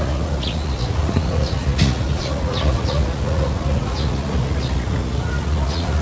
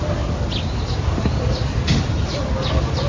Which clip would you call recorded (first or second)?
second